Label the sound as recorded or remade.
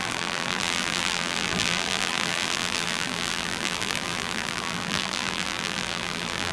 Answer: remade